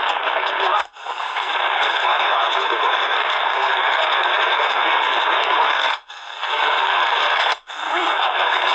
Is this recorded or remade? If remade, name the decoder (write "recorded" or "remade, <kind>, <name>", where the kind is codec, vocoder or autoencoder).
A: remade, codec, SNAC